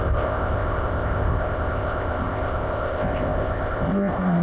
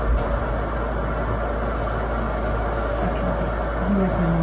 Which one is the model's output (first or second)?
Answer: first